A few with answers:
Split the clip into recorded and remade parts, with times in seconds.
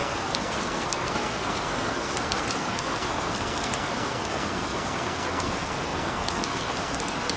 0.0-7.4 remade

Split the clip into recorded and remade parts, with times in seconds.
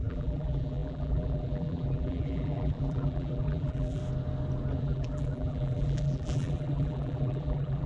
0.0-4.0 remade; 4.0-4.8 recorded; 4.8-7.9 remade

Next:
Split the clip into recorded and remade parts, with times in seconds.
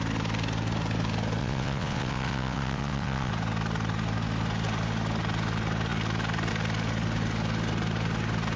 0.0-1.4 recorded; 1.4-3.3 remade; 3.3-8.6 recorded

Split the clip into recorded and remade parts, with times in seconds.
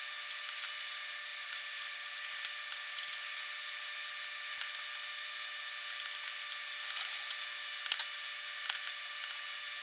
0.0-1.3 recorded; 1.3-3.4 remade; 3.4-9.8 recorded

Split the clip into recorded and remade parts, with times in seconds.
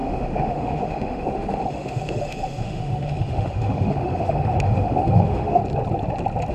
0.0-5.6 remade; 5.6-6.5 recorded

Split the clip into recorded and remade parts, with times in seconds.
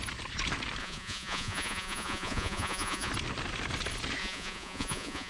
0.0-0.8 recorded; 0.8-3.1 remade; 3.1-4.2 recorded; 4.2-5.3 remade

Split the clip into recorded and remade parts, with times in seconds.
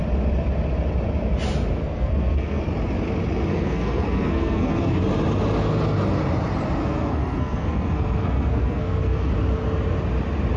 0.0-1.8 recorded; 1.8-2.6 remade; 2.6-3.5 recorded; 3.5-5.0 remade; 5.0-6.8 recorded; 6.8-9.3 remade; 9.3-10.6 recorded